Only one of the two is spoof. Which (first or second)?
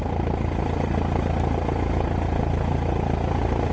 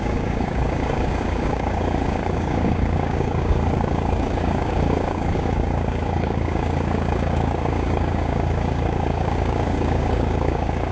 second